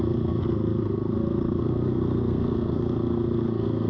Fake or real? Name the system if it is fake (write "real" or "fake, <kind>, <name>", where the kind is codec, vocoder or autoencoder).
fake, codec, SNAC